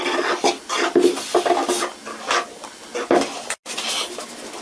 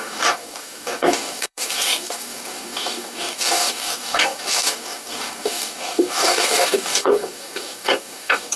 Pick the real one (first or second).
first